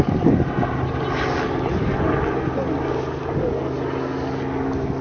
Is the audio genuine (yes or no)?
yes